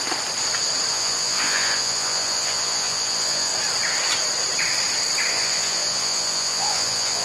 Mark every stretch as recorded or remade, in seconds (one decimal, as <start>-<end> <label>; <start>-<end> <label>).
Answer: 0.0-0.9 recorded; 0.9-3.5 remade; 3.5-5.3 recorded; 5.3-7.2 remade